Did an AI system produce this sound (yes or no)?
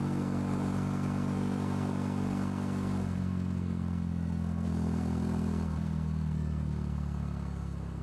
yes